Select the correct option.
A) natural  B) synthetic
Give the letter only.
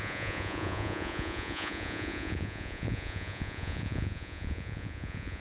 B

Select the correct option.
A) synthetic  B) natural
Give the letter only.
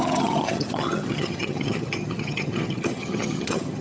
A